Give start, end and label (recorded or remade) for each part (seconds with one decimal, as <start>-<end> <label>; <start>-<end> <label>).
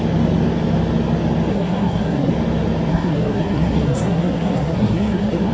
0.0-1.5 recorded; 1.5-2.3 remade; 2.3-2.9 recorded; 2.9-5.5 remade